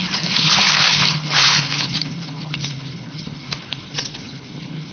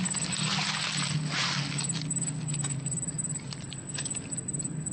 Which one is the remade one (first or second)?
first